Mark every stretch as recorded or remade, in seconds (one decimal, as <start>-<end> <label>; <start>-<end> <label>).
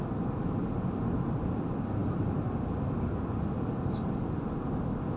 0.0-5.2 recorded